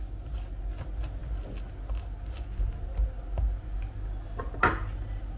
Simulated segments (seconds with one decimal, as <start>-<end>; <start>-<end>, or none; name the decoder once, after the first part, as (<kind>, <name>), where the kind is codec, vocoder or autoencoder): none